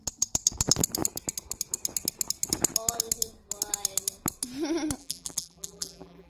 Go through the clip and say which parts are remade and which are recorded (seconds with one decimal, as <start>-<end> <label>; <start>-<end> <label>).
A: 0.0-5.0 recorded; 5.0-6.3 remade